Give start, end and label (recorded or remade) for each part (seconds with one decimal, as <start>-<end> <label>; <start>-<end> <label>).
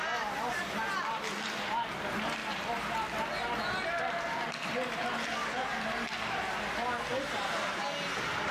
0.0-0.7 remade; 0.7-5.4 recorded; 5.4-6.5 remade; 6.5-8.5 recorded